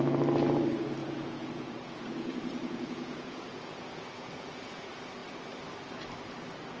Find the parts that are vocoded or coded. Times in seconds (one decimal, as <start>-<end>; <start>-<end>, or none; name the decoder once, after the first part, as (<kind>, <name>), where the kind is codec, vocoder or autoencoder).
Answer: 1.0-4.7 (vocoder, Vocos)